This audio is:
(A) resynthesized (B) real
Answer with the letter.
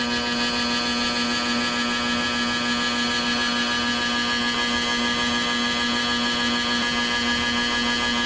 B